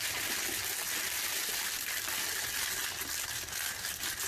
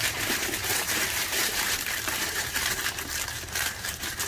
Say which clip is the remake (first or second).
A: second